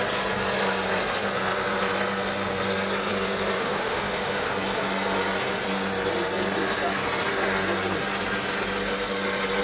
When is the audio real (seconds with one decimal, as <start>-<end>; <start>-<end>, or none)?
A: 0.0-3.6; 4.5-9.6